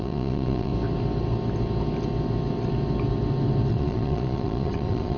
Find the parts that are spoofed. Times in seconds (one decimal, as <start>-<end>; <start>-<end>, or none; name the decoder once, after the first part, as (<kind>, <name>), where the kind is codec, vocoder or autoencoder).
0.0-0.7 (vocoder, Vocos); 3.7-5.2